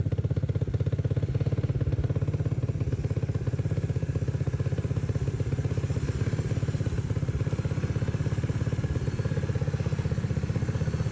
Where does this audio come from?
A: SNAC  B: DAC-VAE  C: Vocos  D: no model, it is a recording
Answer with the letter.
D